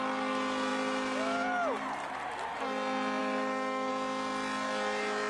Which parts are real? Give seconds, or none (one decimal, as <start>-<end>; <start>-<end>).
0.0-3.2; 3.9-5.3